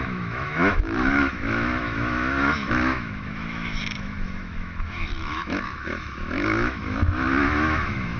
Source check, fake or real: fake